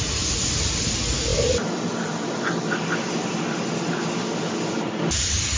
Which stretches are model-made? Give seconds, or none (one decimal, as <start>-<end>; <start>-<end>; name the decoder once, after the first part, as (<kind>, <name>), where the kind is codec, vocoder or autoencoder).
none